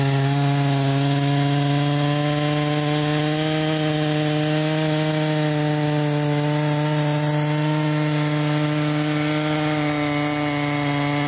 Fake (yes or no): no